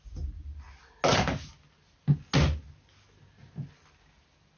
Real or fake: real